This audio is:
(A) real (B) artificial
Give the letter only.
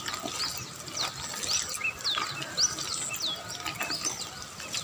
A